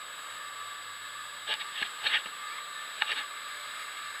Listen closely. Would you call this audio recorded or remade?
recorded